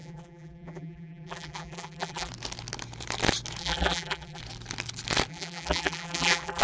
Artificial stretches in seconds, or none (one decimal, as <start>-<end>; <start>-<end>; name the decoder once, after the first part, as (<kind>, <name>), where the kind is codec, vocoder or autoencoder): 0.0-2.3 (vocoder, BigVGAN v2); 3.6-4.4; 5.3-6.6